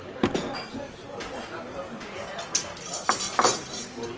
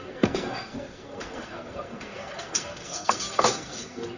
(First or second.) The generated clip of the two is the second